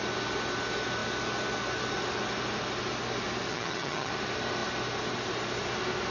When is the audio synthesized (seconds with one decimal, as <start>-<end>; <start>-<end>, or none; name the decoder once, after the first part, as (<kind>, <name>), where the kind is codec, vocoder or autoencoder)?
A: 3.5-4.1 (vocoder, HiFi-GAN)